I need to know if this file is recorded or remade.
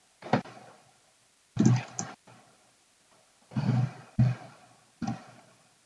recorded